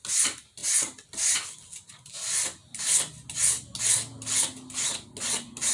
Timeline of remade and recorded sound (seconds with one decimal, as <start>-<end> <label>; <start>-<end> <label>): 0.0-5.7 recorded